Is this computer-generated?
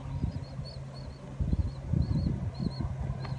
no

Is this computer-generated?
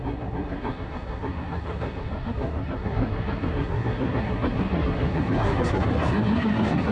yes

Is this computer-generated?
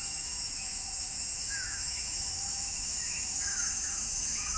yes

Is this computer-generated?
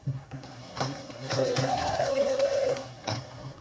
yes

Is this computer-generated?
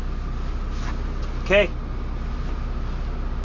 no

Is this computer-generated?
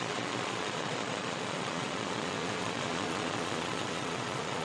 yes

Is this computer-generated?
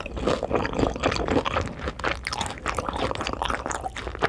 no